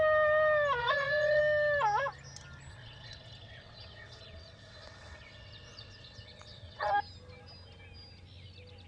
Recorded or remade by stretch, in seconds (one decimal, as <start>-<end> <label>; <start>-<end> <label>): 0.0-0.8 recorded; 0.8-1.4 remade; 1.4-2.7 recorded; 2.7-6.9 remade; 6.9-8.9 recorded